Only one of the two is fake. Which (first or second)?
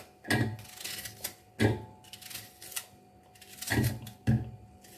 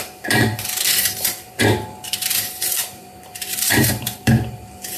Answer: second